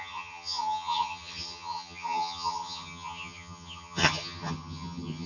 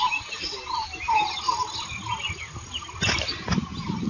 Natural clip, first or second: second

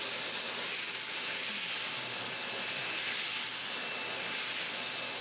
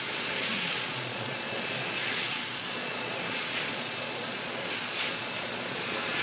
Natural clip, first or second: first